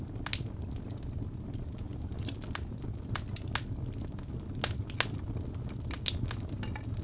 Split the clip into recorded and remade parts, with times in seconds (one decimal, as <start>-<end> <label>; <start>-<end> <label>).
0.0-7.0 recorded